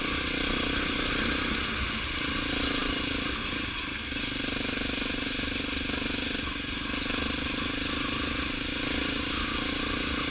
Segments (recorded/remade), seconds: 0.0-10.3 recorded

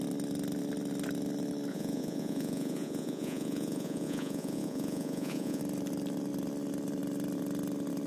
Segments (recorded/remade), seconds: 0.0-1.7 recorded; 1.7-5.6 remade; 5.6-8.1 recorded

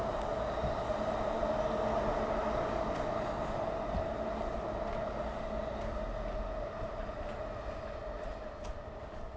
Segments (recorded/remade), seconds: 0.0-9.4 recorded